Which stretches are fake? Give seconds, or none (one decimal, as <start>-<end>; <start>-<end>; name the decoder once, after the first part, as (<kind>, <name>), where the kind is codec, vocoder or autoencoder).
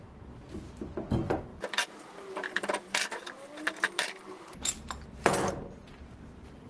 none